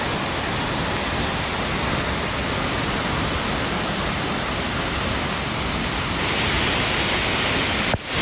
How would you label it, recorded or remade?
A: recorded